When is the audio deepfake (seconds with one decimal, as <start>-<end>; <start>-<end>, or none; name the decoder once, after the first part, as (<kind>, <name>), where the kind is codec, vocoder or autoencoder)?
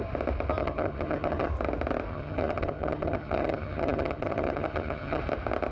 0.6-1.5 (vocoder, HiFi-GAN); 2.1-5.2